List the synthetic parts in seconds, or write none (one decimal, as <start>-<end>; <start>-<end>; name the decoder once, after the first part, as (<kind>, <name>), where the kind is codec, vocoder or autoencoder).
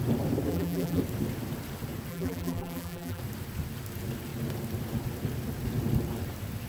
0.5-1.0 (vocoder, BigVGAN v2); 2.1-3.2